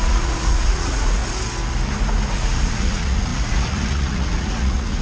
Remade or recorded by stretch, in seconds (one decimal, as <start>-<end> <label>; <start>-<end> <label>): 0.0-1.2 remade; 1.2-2.3 recorded; 2.3-5.0 remade